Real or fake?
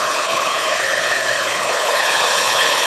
fake